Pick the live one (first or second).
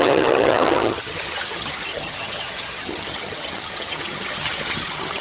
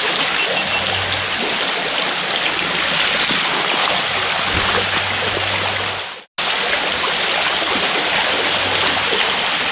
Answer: second